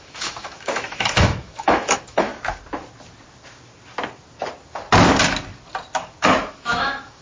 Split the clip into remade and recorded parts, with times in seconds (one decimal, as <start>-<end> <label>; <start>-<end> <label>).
0.0-2.3 remade; 2.3-6.5 recorded; 6.5-7.2 remade